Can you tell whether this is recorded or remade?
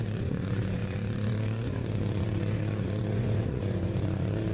remade